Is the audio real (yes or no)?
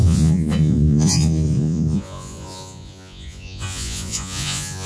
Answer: no